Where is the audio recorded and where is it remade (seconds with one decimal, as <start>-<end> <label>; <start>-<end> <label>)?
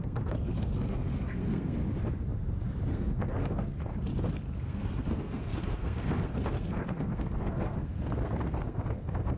0.0-1.8 remade; 1.8-2.9 recorded; 2.9-3.9 remade; 3.9-4.6 recorded; 4.6-9.4 remade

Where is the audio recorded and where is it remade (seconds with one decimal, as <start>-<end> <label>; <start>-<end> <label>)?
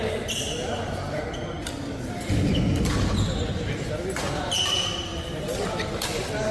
0.0-5.1 recorded; 5.1-5.7 remade; 5.7-6.5 recorded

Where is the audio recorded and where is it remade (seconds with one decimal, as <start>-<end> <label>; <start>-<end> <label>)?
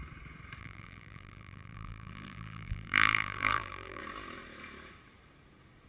0.0-0.6 recorded; 0.6-4.0 remade; 4.0-5.9 recorded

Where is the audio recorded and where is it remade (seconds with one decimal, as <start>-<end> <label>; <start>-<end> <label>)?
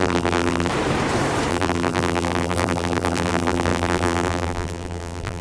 0.0-0.7 remade; 0.7-1.5 recorded; 1.5-5.4 remade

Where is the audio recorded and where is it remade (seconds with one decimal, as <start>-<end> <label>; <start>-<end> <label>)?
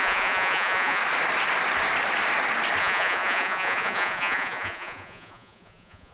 0.0-1.0 remade; 1.0-2.8 recorded; 2.8-6.1 remade